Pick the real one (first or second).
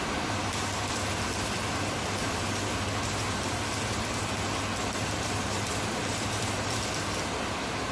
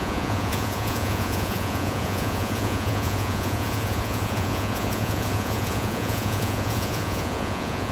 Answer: first